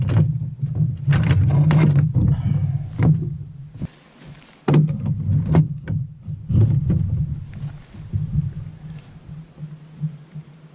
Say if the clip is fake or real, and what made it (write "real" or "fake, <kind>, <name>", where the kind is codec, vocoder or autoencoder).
real